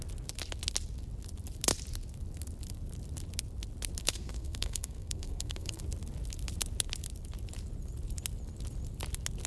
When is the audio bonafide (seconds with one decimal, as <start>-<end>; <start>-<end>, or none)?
0.0-4.0; 5.8-9.5